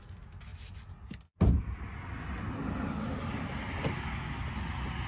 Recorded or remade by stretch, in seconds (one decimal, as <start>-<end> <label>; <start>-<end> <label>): 0.0-5.1 recorded